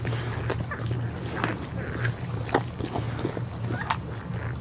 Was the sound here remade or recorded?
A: recorded